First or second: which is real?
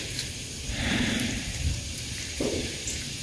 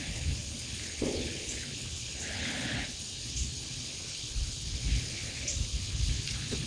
first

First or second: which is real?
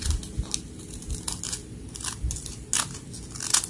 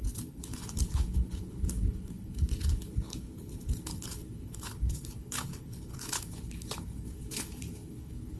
first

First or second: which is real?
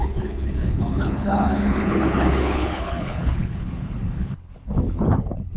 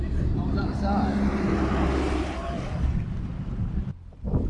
second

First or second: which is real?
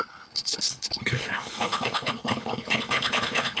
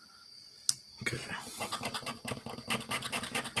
second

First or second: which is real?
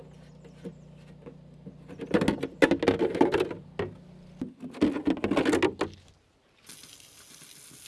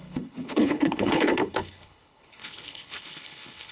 first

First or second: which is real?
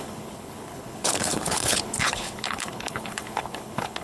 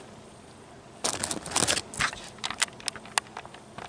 second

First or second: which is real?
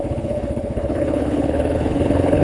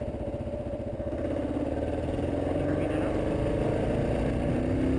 second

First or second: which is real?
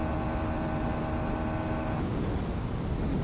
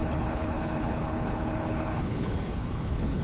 first